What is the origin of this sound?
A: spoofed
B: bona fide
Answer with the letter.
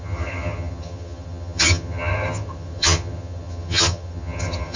A